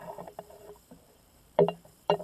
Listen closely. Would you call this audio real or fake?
fake